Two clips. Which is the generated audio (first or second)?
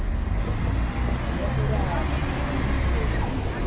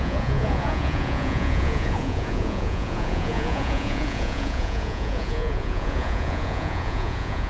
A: second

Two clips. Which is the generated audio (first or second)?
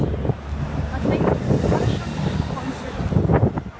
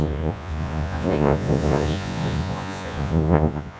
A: second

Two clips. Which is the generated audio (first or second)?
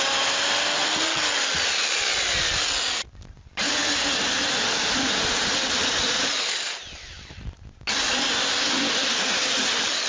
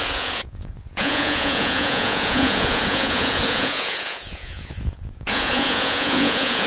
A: second